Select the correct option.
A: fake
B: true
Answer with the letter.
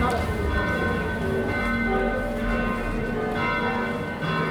B